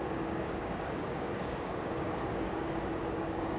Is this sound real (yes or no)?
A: no